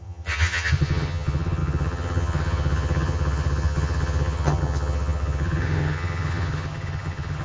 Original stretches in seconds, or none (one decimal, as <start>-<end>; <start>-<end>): none